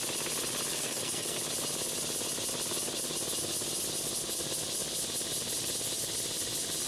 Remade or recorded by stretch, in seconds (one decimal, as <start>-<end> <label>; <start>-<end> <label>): 0.0-0.7 recorded; 0.7-1.4 remade; 1.4-6.9 recorded

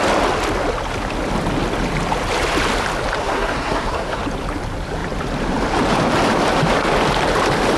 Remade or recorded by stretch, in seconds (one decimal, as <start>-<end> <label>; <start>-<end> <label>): 0.0-3.2 recorded; 3.2-4.2 remade; 4.2-7.8 recorded

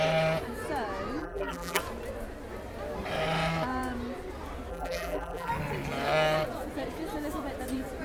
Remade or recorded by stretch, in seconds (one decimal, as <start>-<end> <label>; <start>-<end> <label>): 0.0-1.2 recorded; 1.2-1.8 remade; 1.8-4.7 recorded; 4.7-5.5 remade; 5.5-8.0 recorded